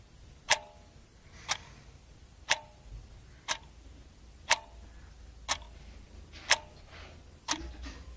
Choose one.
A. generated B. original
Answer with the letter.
B